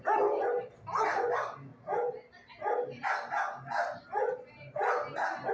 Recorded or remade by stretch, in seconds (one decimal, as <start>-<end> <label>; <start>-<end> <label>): 0.0-5.5 recorded